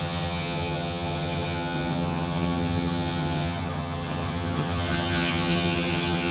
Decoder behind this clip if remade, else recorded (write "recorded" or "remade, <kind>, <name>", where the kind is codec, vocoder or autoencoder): remade, vocoder, HiFi-GAN